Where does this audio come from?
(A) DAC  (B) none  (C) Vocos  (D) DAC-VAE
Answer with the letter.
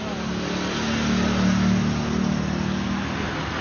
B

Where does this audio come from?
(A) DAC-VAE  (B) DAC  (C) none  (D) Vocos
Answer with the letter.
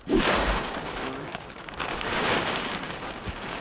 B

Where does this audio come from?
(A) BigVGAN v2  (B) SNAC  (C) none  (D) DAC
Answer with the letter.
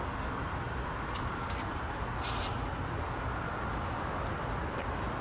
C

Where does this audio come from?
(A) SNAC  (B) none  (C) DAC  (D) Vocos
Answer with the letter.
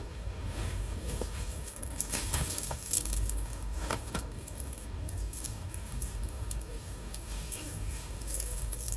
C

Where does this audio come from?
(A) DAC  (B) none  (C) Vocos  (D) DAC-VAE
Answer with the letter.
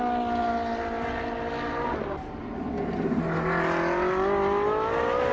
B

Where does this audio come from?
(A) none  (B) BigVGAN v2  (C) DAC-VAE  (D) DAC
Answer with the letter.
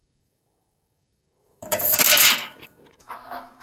D